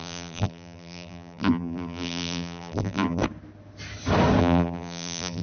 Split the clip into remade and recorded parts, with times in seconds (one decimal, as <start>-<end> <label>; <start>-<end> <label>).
0.0-3.2 remade; 3.2-4.4 recorded; 4.4-5.4 remade